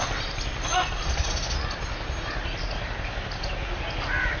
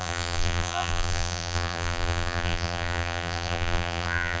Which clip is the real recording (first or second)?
first